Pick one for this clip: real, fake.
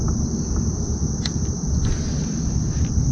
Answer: real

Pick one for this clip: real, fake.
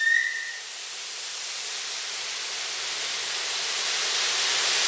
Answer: real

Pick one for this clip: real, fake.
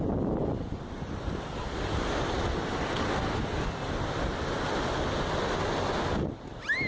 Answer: real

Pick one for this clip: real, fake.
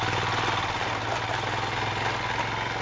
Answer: real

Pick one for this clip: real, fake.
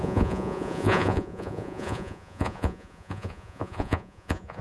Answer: fake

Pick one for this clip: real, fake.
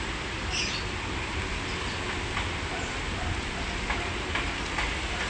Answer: real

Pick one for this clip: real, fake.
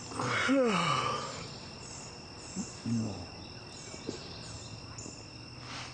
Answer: real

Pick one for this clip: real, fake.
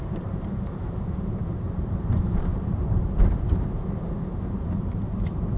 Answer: fake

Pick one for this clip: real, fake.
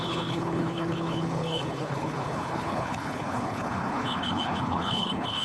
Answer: fake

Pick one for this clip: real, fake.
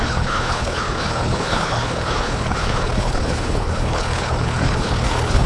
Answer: fake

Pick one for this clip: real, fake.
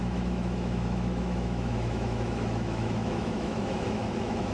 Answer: fake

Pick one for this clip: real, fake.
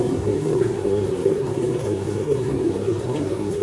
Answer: fake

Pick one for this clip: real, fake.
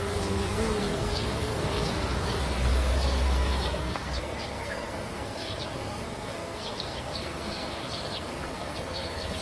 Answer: fake